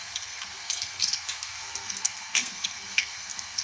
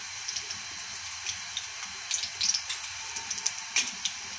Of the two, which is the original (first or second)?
second